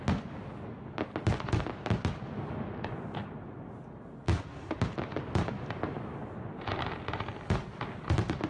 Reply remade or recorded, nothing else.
recorded